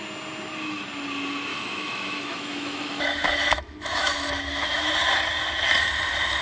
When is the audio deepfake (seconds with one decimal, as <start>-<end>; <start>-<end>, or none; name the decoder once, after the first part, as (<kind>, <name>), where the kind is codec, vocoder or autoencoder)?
1.5-4.9 (autoencoder, DAC-VAE)